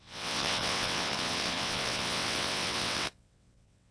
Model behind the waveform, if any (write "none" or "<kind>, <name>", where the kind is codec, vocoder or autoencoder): vocoder, WaveNeXt